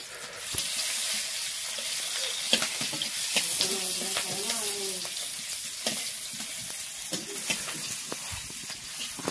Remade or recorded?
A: recorded